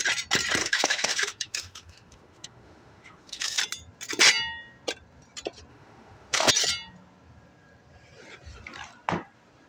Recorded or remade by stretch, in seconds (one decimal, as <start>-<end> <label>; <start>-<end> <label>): 0.0-0.6 recorded; 0.6-3.6 remade; 3.6-5.7 recorded; 5.7-6.5 remade; 6.5-9.7 recorded